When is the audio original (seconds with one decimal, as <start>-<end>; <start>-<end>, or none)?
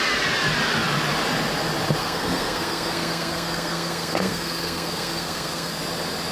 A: 0.0-2.0; 5.8-6.3